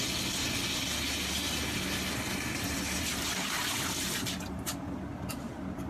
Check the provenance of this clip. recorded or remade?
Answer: recorded